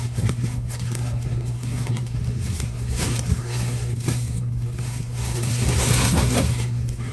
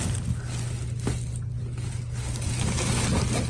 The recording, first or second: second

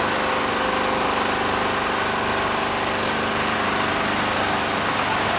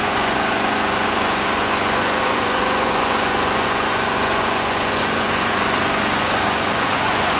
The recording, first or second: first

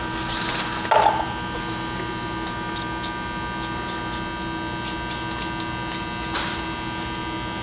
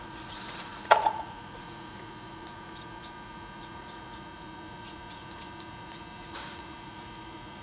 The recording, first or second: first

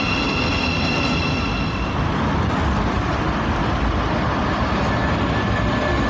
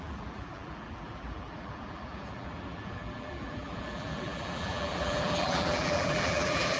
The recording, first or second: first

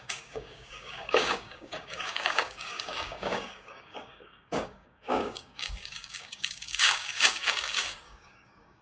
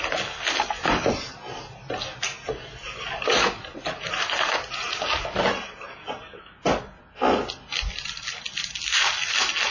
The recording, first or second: second